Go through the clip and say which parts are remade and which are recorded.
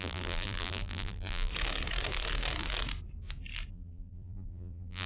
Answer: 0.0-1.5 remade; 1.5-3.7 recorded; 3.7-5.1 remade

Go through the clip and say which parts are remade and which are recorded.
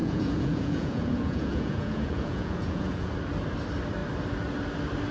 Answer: 0.0-3.1 remade; 3.1-5.1 recorded